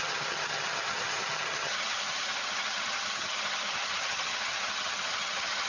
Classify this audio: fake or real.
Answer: fake